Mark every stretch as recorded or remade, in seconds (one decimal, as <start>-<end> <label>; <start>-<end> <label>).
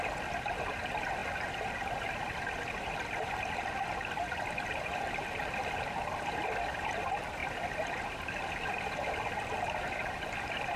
0.0-10.8 recorded